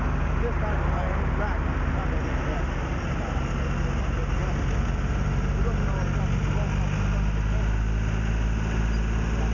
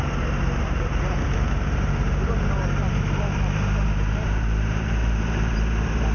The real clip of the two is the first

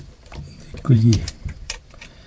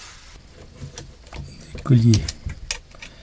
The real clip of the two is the second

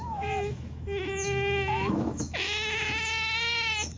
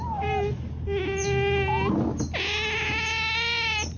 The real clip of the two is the second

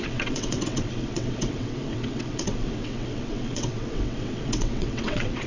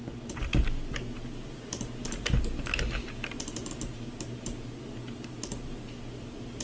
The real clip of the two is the second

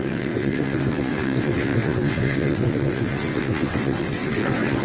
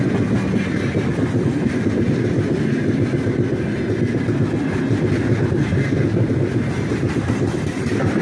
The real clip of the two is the second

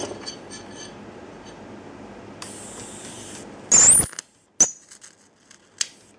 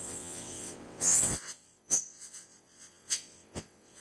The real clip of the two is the first